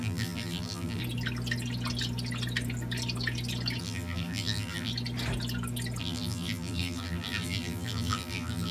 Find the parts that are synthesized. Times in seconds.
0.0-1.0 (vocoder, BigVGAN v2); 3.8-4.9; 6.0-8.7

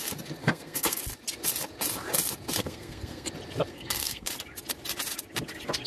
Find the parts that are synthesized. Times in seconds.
0.4-1.0 (codec, SNAC); 2.6-3.3; 3.7-4.3

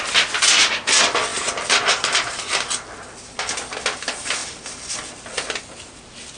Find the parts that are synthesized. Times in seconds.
1.3-2.4 (vocoder, BigVGAN v2)

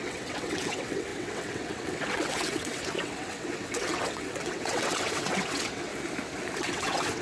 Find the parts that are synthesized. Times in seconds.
0.0-5.9 (vocoder, WaveNeXt); 6.6-7.2